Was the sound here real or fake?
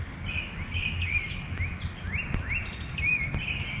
real